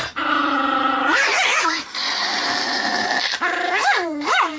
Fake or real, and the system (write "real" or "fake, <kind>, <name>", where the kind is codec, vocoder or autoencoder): fake, vocoder, BigVGAN v2